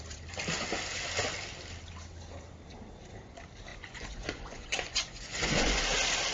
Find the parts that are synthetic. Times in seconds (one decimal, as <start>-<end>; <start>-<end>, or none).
3.7-5.8